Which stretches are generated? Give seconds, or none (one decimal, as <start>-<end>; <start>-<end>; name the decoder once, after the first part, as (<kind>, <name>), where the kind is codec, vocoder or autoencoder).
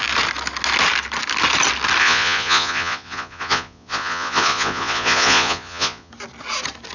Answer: 2.0-6.1 (vocoder, Vocos)